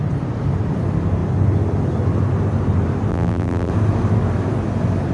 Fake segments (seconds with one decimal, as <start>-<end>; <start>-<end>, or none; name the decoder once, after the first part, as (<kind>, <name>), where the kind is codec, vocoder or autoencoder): 3.1-3.7 (vocoder, BigVGAN v2)